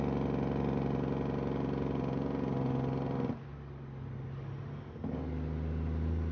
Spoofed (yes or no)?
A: no